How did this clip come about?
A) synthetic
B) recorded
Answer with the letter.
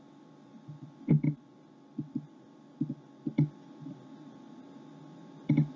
B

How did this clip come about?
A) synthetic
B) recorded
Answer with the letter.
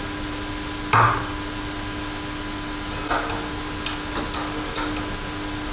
B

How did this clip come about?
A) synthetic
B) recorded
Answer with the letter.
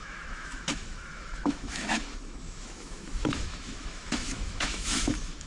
A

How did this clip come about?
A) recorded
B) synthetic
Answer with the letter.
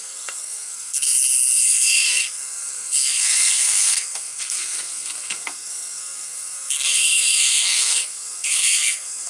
B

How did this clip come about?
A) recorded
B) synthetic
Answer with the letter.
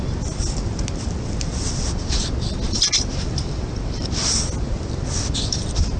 A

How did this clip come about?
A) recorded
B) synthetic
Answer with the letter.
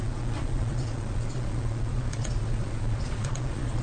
B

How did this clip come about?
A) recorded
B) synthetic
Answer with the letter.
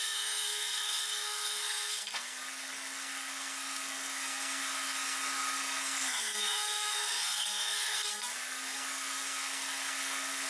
B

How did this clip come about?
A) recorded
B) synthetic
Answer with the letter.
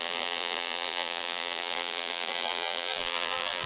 B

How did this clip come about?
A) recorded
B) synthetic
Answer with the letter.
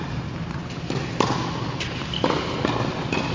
A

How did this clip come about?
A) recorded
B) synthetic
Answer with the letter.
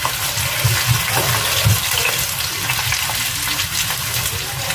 A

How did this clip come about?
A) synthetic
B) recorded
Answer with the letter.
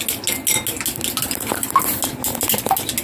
B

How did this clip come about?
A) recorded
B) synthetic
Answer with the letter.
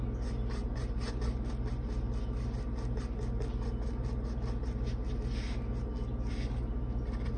A